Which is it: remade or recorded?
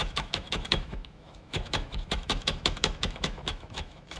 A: remade